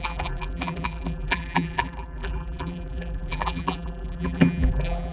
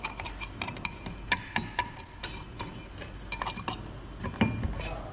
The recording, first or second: second